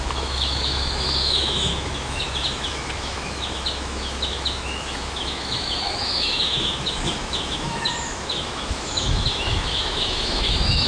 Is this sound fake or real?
fake